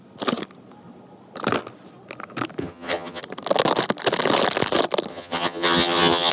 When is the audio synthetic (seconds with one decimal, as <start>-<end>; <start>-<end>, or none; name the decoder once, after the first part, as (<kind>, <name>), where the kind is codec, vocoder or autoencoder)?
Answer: 2.6-3.2 (vocoder, HiFi-GAN); 5.1-6.3